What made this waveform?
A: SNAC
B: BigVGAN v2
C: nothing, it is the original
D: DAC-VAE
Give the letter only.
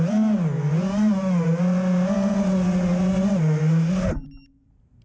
C